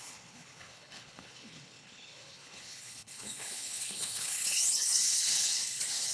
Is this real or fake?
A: fake